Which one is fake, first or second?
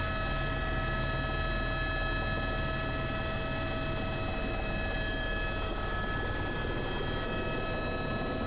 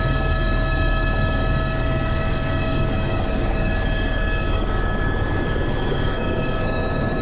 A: second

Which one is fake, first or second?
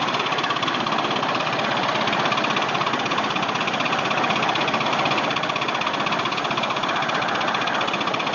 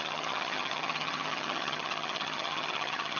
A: second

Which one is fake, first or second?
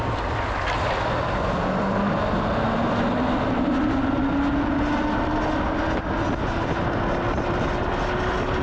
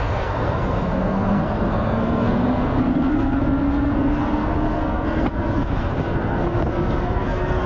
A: second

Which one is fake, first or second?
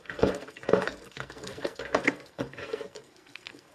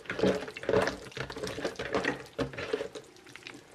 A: first